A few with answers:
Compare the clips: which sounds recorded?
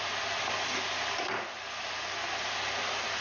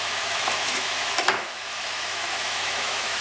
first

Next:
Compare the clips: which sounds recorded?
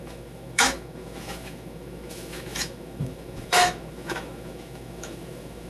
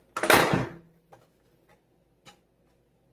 second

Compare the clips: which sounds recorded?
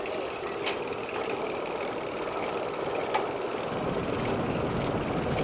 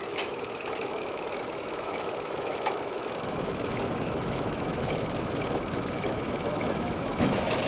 first